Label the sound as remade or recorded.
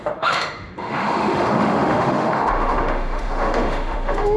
remade